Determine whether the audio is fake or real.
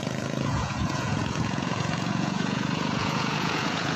fake